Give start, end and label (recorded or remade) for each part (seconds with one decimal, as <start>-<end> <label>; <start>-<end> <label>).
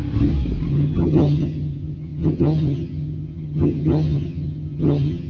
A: 0.0-0.7 recorded; 0.7-5.3 remade